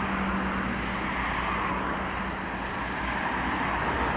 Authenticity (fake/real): real